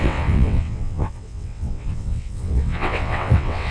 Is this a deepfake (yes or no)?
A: yes